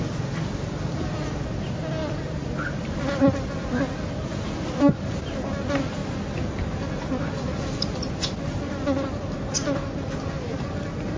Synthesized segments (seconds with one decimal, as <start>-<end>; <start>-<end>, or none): none